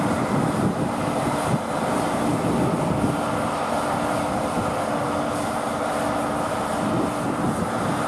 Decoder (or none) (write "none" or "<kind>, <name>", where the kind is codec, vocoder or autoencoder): none